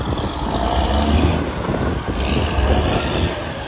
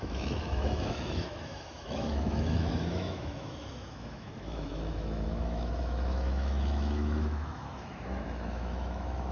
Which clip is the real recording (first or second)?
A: first